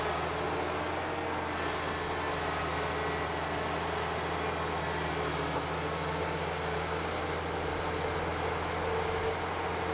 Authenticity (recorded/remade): recorded